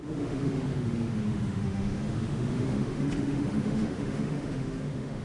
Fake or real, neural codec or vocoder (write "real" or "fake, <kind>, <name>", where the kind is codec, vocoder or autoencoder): fake, autoencoder, DAC-VAE